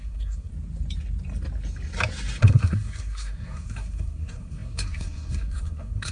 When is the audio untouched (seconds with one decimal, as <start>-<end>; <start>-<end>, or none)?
0.5-2.4

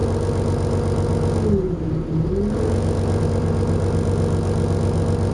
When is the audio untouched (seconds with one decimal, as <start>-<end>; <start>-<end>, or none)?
0.0-5.3